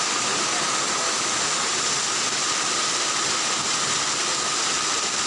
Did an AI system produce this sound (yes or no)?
no